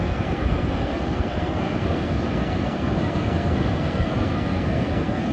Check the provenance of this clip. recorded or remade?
remade